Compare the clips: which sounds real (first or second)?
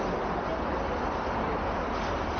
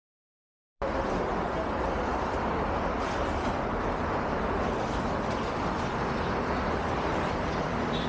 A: first